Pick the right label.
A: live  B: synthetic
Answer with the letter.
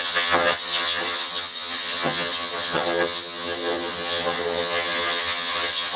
B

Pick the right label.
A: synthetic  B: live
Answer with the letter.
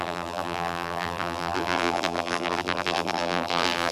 A